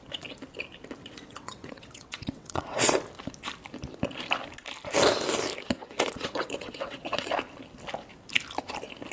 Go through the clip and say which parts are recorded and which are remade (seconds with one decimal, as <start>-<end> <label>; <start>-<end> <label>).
0.0-1.0 recorded; 1.0-3.0 remade; 3.0-5.8 recorded; 5.8-7.3 remade; 7.3-9.1 recorded